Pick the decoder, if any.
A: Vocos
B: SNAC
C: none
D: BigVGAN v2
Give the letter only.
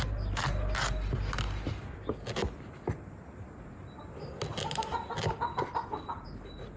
C